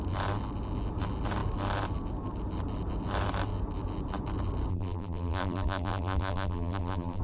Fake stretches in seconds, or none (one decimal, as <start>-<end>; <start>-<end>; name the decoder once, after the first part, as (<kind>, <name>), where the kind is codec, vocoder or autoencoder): 4.7-7.2 (vocoder, BigVGAN v2)